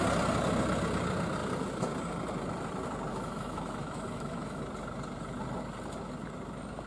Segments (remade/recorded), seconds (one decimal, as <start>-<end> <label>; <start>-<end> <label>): 0.0-3.1 recorded; 3.1-4.6 remade; 4.6-6.9 recorded

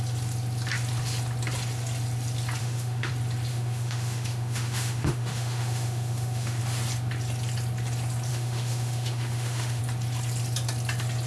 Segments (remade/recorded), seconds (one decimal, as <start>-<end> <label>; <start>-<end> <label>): 0.0-2.6 recorded; 2.6-3.1 remade; 3.1-3.5 recorded; 3.5-6.6 remade; 6.6-8.3 recorded; 8.3-9.8 remade; 9.8-11.3 recorded

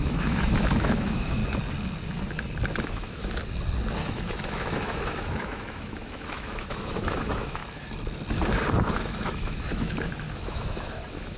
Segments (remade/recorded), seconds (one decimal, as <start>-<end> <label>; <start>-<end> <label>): 0.0-1.4 remade; 1.4-2.8 recorded; 2.8-3.4 remade; 3.4-4.0 recorded; 4.0-7.6 remade; 7.6-8.9 recorded; 8.9-11.4 remade

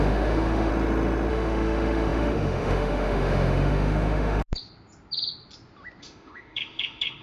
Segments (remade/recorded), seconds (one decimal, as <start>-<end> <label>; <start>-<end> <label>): 0.0-0.7 remade; 0.7-1.3 recorded; 1.3-4.4 remade; 4.4-6.0 recorded; 6.0-7.2 remade